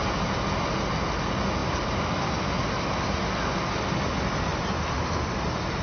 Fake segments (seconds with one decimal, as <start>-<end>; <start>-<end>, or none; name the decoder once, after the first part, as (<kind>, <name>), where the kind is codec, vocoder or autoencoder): 1.6-2.3 (vocoder, BigVGAN v2)